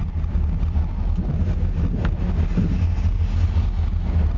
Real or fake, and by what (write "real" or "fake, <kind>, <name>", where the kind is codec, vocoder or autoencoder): real